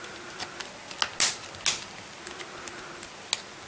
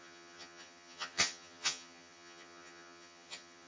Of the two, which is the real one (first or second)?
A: first